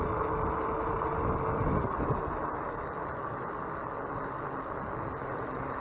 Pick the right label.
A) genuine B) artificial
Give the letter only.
A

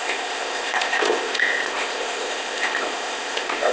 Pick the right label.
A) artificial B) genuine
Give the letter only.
A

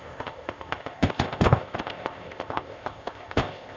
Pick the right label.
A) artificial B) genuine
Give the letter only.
A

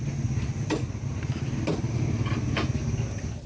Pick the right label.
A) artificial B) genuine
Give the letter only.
B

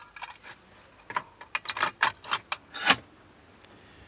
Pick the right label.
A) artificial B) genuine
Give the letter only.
B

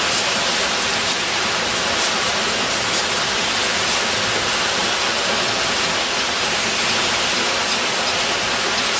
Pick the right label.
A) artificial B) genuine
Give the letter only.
B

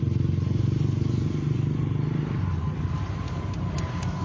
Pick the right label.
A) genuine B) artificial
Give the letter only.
A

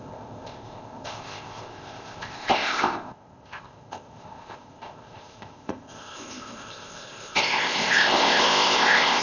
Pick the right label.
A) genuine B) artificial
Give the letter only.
B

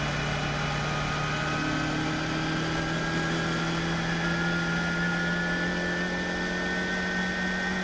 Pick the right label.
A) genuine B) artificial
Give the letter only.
A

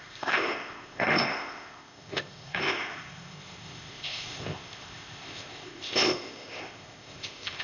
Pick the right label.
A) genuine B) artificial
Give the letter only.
B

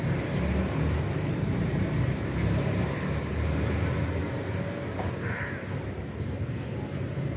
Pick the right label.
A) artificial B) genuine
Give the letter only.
B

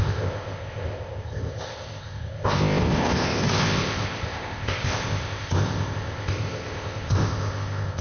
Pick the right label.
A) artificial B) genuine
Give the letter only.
A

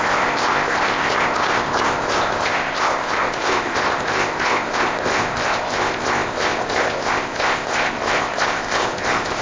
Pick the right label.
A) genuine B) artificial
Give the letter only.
B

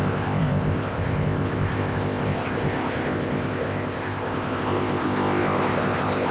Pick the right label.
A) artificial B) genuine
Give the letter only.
A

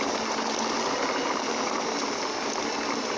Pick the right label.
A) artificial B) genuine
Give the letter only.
B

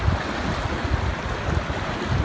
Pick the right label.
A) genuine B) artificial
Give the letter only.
A